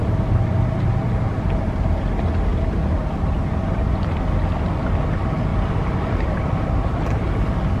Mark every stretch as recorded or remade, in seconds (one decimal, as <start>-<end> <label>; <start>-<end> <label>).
0.0-2.5 recorded; 2.5-4.2 remade; 4.2-5.5 recorded; 5.5-7.3 remade; 7.3-7.8 recorded

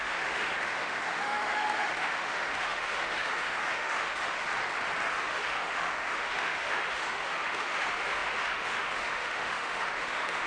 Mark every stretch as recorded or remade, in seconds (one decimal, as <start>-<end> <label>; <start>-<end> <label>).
0.0-4.5 remade; 4.5-5.1 recorded; 5.1-10.5 remade

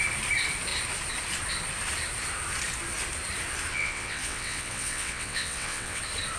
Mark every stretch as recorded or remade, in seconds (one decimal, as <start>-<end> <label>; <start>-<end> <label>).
0.0-3.7 recorded; 3.7-6.0 remade; 6.0-6.4 recorded

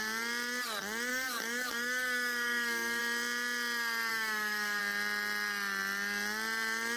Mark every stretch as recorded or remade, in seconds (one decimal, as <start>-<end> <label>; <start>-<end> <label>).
0.0-1.1 recorded; 1.1-3.0 remade; 3.0-4.1 recorded; 4.1-4.8 remade; 4.8-7.0 recorded

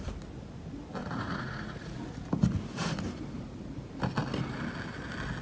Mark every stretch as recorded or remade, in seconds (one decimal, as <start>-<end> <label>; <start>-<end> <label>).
0.0-1.0 recorded; 1.0-2.0 remade; 2.0-5.4 recorded

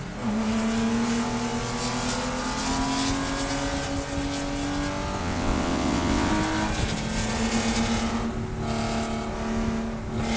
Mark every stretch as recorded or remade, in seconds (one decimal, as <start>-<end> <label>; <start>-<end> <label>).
0.0-5.2 recorded; 5.2-6.3 remade; 6.3-10.4 recorded